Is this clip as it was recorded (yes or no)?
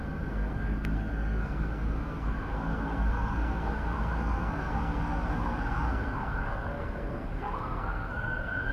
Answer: no